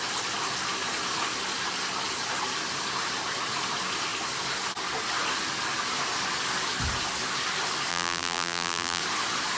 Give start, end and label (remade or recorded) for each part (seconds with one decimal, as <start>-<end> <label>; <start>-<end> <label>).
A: 0.0-7.9 recorded; 7.9-9.0 remade; 9.0-9.6 recorded